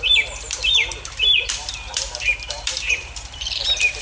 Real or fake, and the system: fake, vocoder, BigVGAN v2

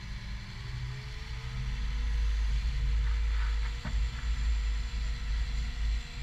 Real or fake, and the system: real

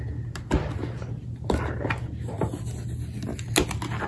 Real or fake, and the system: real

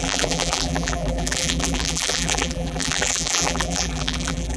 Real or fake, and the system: fake, vocoder, BigVGAN v2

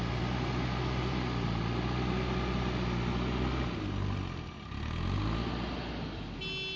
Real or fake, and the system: real